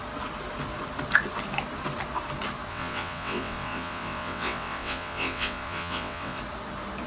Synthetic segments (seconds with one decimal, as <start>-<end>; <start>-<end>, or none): 2.7-6.4